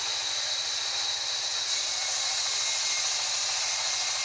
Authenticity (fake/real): real